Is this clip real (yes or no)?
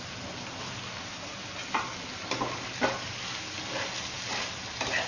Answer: yes